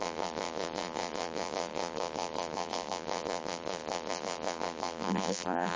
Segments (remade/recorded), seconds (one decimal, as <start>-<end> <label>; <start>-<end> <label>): 0.0-5.8 remade